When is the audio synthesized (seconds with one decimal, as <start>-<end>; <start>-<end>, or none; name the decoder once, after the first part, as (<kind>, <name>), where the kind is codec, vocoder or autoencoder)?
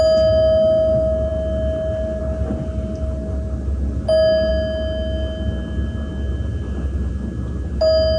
none